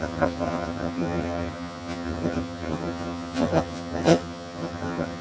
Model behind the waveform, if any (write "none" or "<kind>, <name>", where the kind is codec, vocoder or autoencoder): vocoder, HiFi-GAN